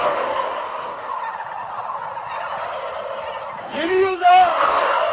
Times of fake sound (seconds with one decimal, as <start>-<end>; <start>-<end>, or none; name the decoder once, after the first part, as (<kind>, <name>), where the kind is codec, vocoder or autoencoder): 0.0-1.1 (codec, DAC); 3.6-5.1